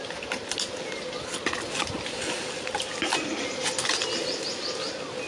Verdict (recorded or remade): recorded